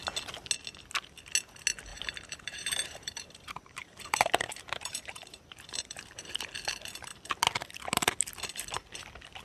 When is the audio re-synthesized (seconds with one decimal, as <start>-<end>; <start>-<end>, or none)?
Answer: 1.9-6.3